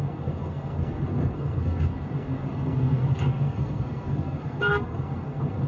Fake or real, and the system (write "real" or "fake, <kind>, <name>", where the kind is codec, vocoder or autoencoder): fake, codec, SNAC